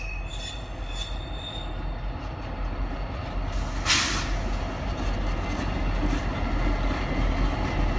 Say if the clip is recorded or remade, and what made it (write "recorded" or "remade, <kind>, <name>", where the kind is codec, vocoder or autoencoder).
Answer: recorded